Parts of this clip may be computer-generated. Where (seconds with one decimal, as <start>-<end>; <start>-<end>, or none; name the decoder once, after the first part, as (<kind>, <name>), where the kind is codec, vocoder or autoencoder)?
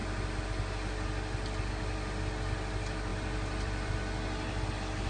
3.1-3.9 (vocoder, BigVGAN v2)